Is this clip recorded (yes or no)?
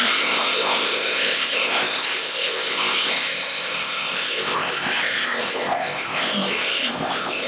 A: no